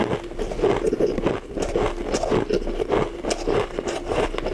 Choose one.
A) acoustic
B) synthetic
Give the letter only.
A